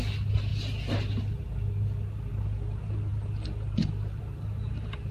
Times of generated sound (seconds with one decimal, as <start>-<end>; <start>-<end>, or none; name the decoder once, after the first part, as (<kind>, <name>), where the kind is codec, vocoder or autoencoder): none